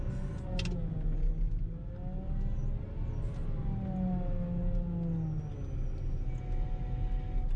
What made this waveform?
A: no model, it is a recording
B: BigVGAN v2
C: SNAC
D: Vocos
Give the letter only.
A